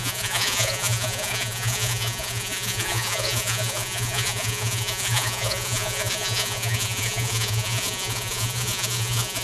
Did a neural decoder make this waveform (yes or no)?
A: yes